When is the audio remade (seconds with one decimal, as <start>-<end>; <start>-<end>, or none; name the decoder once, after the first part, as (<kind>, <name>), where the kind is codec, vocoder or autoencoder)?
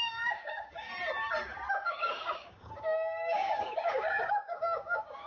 0.0-0.9 (codec, DAC); 1.7-5.3